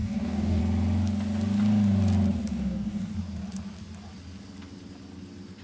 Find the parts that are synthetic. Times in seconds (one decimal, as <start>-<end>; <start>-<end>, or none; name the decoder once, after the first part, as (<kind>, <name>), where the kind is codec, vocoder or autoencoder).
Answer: 0.0-0.6 (codec, DAC); 2.5-3.1